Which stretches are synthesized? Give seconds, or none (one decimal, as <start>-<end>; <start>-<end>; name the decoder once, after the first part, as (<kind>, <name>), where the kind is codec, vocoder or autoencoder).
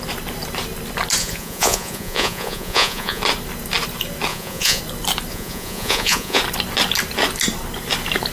1.2-3.2 (vocoder, Vocos); 4.3-4.8; 5.3-6.4